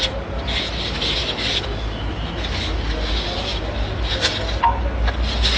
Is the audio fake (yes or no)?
no